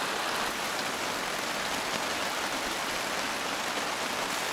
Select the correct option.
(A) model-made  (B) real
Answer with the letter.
B